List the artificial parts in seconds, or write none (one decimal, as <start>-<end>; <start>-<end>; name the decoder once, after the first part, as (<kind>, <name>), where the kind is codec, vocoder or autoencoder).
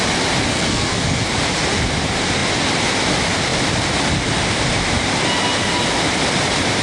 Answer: 0.5-1.2 (codec, SNAC)